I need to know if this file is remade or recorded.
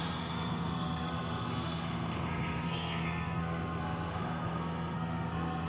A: remade